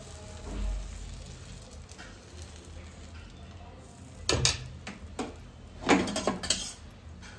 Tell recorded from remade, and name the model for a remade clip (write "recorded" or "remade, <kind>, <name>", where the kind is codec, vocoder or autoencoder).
recorded